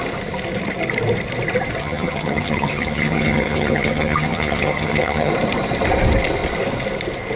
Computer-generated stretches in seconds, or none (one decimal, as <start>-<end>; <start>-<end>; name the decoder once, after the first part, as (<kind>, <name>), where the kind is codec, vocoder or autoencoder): 1.8-5.3 (vocoder, HiFi-GAN)